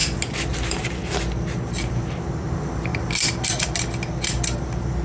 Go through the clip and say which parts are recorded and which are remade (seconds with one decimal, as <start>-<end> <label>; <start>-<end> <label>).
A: 0.0-0.5 recorded; 0.5-1.0 remade; 1.0-1.9 recorded; 1.9-2.9 remade; 2.9-4.6 recorded; 4.6-5.0 remade

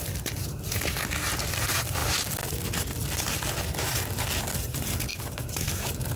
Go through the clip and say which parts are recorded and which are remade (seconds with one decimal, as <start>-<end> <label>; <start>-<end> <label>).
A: 0.0-5.1 recorded; 5.1-6.2 remade

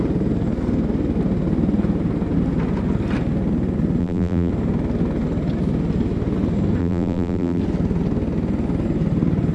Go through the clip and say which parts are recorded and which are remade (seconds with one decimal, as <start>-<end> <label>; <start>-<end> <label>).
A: 0.0-4.0 recorded; 4.0-4.5 remade; 4.5-6.8 recorded; 6.8-7.6 remade; 7.6-9.5 recorded

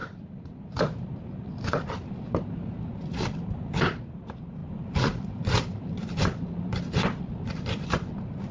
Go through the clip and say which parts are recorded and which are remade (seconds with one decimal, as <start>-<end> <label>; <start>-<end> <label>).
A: 0.0-4.6 recorded; 4.6-7.3 remade; 7.3-8.5 recorded

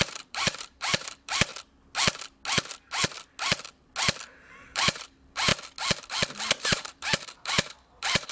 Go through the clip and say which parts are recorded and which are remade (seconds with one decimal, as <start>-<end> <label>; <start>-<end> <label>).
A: 0.0-1.5 remade; 1.5-4.2 recorded; 4.2-5.5 remade; 5.5-6.6 recorded; 6.6-8.3 remade

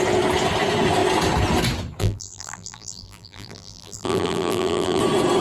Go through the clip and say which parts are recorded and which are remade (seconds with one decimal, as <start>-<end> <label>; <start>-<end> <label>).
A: 0.0-2.0 recorded; 2.0-5.0 remade; 5.0-5.4 recorded

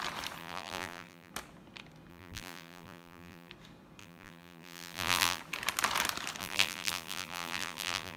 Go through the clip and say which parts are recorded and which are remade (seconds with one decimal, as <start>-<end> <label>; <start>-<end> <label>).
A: 0.0-0.4 recorded; 0.4-1.3 remade; 1.3-2.1 recorded; 2.1-3.5 remade; 3.5-4.0 recorded; 4.0-5.4 remade; 5.4-6.4 recorded; 6.4-8.2 remade